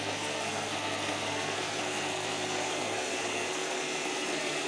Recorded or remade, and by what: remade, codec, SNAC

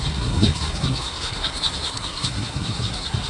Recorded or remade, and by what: remade, codec, SNAC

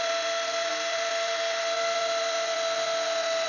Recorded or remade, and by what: recorded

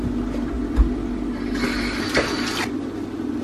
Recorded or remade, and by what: recorded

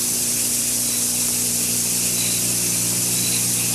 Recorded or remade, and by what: recorded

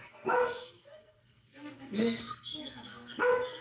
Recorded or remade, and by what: remade, codec, SNAC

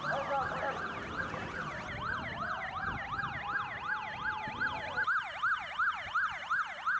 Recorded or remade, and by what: recorded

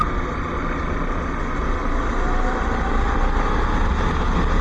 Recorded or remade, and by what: recorded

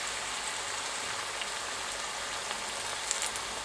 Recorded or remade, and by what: recorded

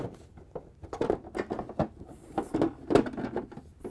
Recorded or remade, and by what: recorded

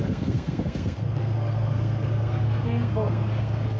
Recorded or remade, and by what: remade, codec, SNAC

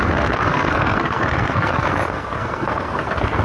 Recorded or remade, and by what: remade, codec, SNAC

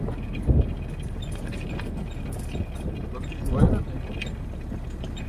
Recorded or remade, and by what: recorded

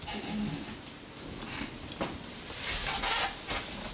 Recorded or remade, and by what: recorded